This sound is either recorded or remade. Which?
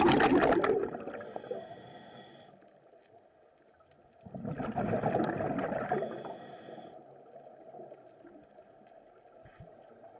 recorded